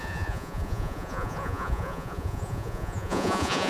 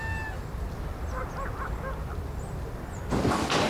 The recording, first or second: second